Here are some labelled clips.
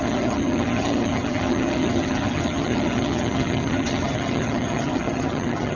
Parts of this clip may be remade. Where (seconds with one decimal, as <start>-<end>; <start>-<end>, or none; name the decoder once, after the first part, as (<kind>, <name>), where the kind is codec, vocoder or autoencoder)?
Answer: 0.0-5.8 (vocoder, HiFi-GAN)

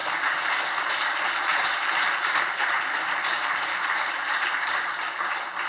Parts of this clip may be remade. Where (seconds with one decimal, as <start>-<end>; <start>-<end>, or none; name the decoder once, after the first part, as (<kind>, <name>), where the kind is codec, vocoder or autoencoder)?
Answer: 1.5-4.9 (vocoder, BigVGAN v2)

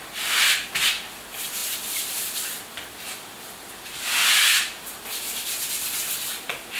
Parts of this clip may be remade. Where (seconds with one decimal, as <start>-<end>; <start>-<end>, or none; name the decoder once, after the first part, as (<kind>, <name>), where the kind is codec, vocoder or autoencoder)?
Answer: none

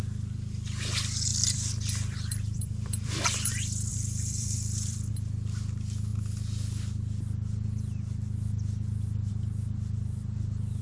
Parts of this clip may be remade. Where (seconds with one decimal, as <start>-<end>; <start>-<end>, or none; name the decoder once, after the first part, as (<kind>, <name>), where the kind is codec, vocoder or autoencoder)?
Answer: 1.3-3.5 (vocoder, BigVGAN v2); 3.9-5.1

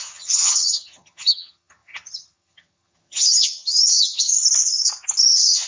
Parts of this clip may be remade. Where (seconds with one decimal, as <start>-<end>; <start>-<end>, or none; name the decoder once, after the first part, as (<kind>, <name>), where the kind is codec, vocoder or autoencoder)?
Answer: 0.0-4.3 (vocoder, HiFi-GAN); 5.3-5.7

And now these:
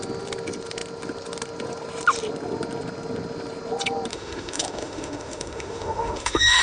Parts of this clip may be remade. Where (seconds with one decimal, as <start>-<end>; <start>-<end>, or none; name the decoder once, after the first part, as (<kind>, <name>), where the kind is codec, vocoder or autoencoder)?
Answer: 4.1-6.6 (autoencoder, DAC-VAE)